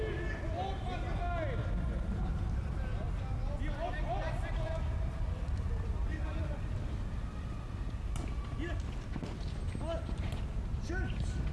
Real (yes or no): yes